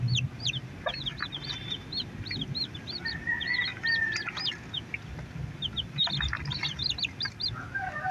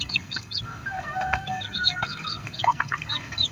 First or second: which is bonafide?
first